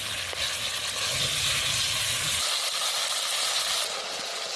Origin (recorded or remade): recorded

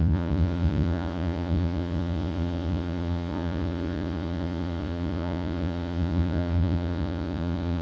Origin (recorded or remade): remade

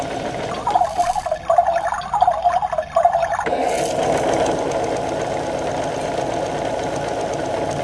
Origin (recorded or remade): recorded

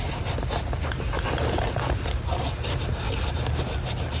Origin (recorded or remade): recorded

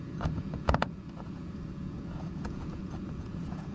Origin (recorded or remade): remade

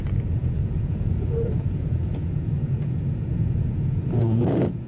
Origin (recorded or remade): remade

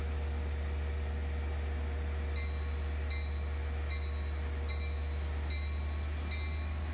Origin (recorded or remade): recorded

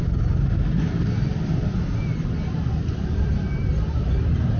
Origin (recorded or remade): recorded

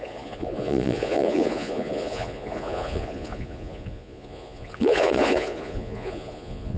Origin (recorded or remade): remade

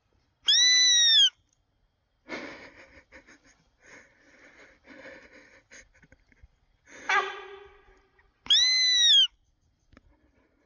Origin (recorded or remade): recorded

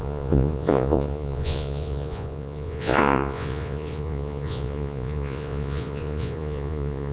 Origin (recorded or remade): remade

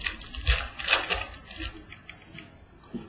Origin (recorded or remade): recorded